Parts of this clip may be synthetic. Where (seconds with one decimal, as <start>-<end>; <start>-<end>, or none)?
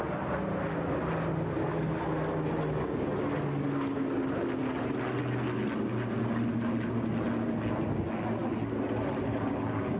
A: none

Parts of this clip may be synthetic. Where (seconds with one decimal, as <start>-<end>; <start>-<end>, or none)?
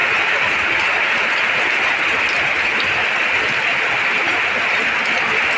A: none